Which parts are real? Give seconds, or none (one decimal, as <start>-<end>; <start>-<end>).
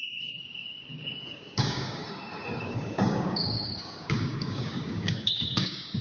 2.0-2.6